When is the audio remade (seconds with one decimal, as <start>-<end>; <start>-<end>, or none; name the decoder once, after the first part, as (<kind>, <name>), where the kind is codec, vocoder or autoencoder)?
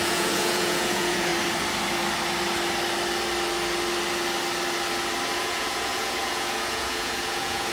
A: 0.0-1.3 (vocoder, Vocos); 5.4-7.7